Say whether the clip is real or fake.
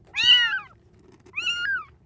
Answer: real